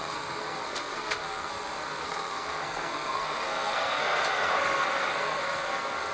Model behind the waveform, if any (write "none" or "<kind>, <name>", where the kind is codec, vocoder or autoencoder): codec, SNAC